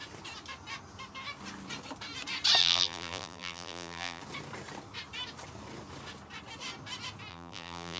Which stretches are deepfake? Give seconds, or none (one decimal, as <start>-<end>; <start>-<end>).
2.6-4.2; 7.3-8.0